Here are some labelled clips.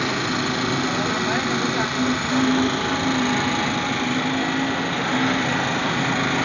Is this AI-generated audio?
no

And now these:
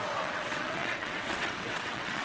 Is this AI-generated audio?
yes